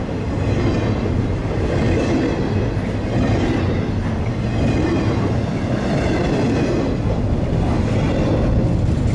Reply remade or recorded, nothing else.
recorded